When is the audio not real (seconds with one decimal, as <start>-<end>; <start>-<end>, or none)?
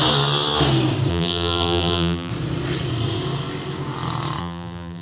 1.1-2.3; 4.4-5.0